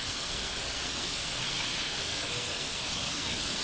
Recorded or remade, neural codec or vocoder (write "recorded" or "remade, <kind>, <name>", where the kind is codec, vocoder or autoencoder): remade, codec, SNAC